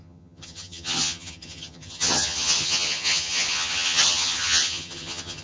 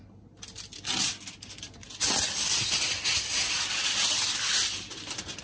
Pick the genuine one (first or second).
second